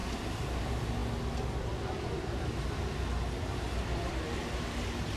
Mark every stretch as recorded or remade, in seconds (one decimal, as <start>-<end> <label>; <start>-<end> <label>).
0.0-0.6 remade; 0.6-5.2 recorded